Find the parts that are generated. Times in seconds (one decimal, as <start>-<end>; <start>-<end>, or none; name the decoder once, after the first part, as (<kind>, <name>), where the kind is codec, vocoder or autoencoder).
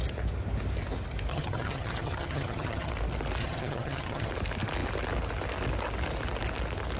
1.3-2.9 (vocoder, HiFi-GAN); 3.4-4.3